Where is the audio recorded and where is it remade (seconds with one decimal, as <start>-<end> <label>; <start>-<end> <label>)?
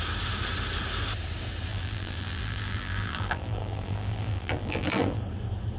0.0-1.7 recorded; 1.7-5.2 remade; 5.2-5.8 recorded